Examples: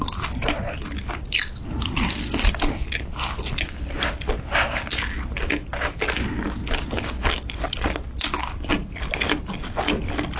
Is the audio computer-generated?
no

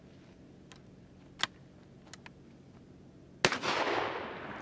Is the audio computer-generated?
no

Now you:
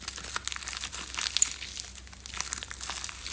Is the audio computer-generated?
no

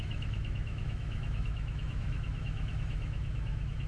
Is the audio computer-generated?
yes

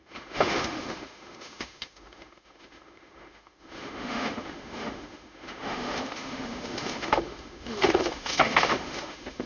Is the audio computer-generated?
yes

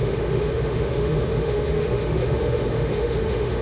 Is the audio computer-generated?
yes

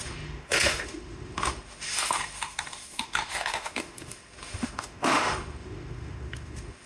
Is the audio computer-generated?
yes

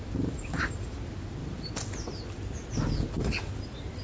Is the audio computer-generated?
no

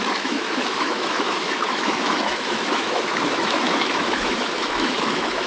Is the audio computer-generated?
yes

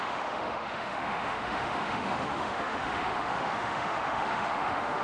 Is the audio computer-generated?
yes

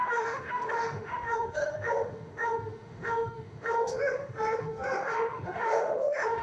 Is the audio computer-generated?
yes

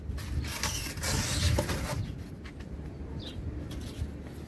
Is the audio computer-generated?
no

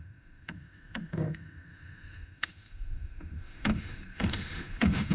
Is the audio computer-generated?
yes